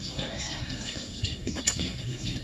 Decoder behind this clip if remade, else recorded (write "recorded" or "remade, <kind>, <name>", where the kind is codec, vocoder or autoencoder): remade, codec, SNAC